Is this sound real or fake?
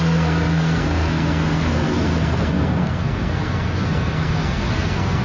fake